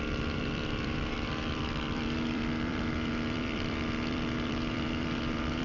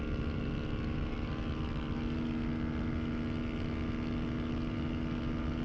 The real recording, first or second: second